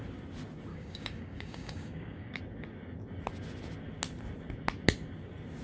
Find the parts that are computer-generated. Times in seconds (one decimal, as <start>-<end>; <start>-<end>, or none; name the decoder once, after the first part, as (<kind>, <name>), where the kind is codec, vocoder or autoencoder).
0.7-2.4 (codec, DAC)